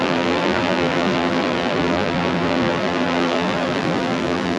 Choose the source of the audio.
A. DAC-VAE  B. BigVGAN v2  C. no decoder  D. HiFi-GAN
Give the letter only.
B